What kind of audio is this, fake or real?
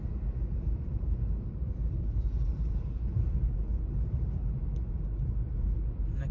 fake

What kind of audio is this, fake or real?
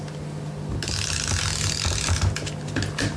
real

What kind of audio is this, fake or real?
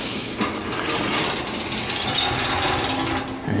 real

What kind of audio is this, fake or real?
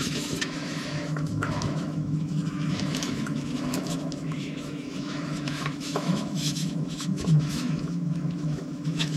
fake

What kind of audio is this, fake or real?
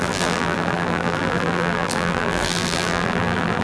fake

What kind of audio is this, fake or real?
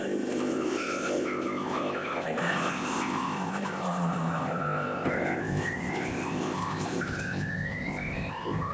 fake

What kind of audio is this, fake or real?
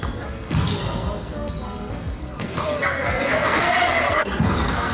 fake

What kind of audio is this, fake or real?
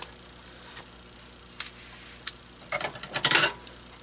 real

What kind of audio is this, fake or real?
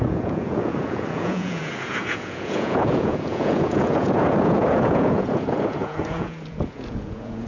fake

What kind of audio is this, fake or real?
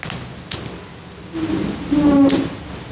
real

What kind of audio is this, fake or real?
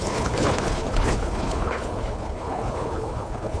fake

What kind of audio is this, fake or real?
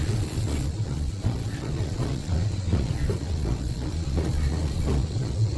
fake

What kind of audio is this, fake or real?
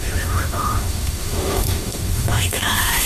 fake